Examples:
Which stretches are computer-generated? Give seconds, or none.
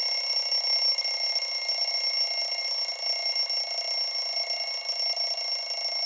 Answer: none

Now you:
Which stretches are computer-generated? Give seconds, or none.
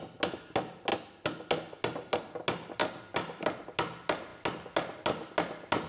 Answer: none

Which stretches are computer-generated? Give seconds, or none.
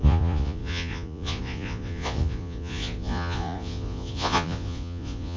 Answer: 0.0-5.4 (vocoder, Vocos)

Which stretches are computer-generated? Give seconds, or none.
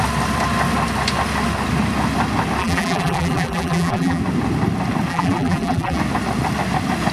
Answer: 2.6-4.2 (vocoder, BigVGAN v2); 5.1-6.0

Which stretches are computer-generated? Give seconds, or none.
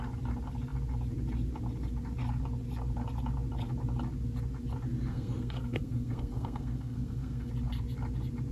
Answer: 5.1-7.5 (codec, SNAC)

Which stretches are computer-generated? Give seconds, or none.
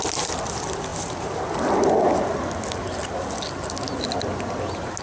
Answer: none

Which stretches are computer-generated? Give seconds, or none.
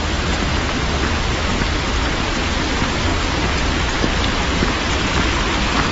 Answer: none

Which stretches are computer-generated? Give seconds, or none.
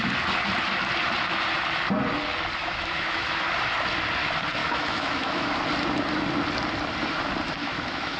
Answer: 2.6-3.5 (autoencoder, DAC-VAE); 4.6-5.5; 7.6-8.2